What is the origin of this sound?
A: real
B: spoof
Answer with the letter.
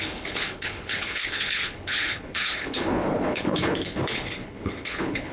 B